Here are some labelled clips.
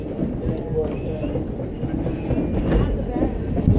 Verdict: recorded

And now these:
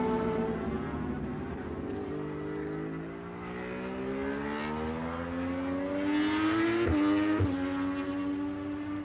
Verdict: recorded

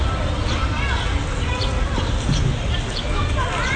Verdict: recorded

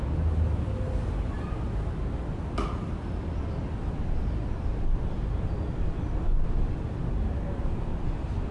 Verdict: recorded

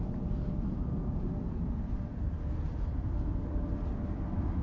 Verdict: recorded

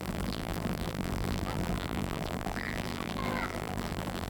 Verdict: remade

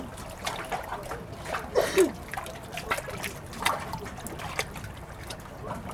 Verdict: recorded